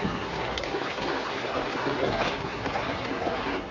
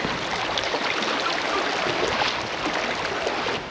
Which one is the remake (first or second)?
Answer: first